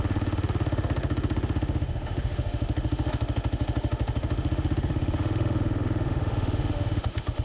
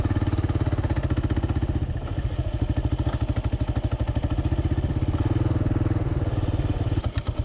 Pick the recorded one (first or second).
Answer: second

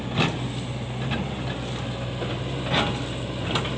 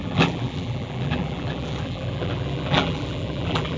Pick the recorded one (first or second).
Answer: first